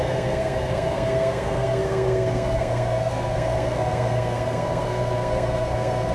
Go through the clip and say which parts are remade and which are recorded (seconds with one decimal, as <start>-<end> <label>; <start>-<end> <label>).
0.0-6.1 remade